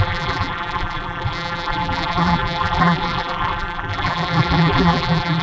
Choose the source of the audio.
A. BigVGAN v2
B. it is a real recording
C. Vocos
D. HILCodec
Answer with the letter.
A